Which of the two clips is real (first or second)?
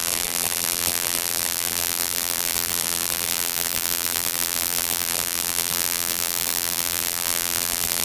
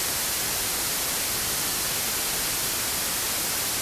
second